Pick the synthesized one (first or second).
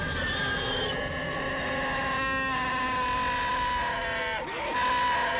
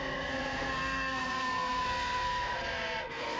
second